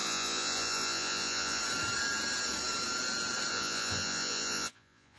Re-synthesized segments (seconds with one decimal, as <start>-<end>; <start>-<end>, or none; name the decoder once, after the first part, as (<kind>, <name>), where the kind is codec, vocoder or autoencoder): 0.0-1.6 (vocoder, Vocos); 3.5-5.2